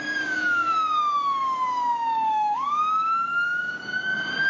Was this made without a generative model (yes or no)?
no